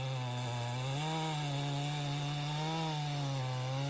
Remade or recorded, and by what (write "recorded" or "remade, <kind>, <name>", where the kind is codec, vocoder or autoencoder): recorded